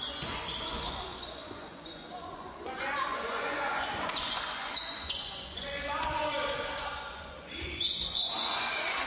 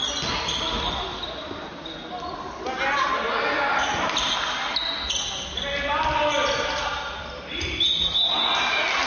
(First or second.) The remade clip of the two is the first